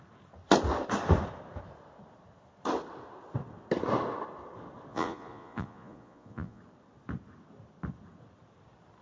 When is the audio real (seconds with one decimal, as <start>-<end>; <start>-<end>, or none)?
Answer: 0.0-4.9; 6.6-9.0